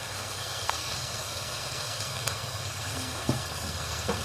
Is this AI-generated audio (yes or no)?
yes